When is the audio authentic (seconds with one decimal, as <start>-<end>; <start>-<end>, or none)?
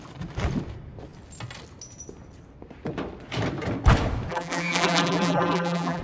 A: 0.0-4.3